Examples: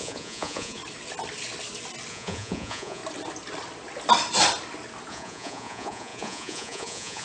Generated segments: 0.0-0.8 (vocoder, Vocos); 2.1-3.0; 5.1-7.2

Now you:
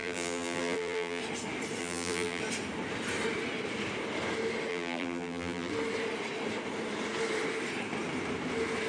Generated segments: 0.0-1.2 (vocoder, BigVGAN v2); 1.8-2.4; 4.7-5.7

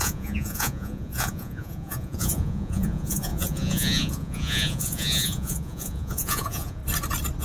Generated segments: 0.0-6.8 (vocoder, Vocos)